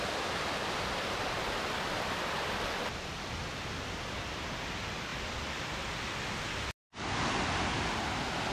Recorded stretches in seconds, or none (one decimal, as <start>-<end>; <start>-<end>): 0.0-8.5